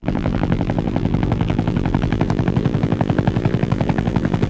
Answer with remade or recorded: remade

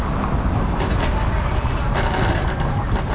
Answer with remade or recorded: recorded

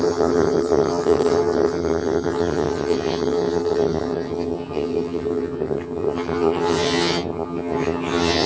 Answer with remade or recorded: remade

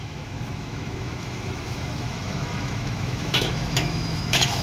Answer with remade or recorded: remade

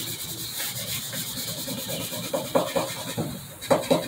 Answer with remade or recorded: recorded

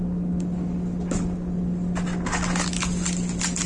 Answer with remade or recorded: recorded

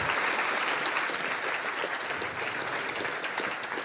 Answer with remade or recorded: recorded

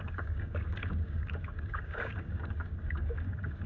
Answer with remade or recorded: remade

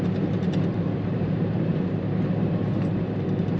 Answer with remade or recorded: remade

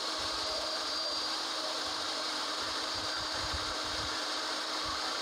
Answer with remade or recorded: remade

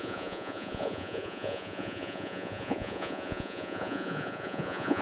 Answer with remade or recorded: remade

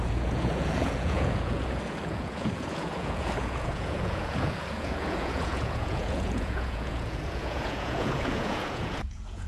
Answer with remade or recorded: remade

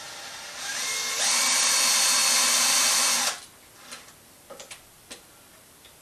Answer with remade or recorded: recorded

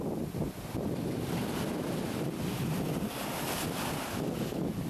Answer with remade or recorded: recorded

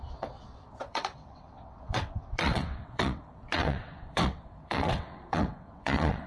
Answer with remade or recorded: remade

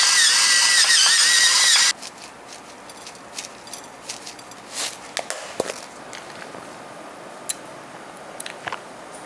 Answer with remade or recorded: recorded